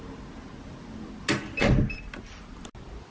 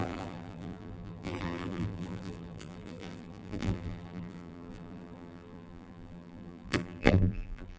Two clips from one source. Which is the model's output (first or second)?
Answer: second